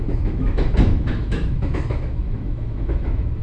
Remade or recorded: remade